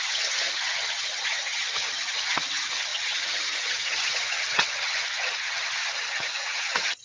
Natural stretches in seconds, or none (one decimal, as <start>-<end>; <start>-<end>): none